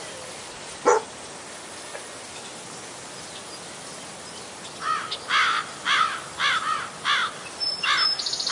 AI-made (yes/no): no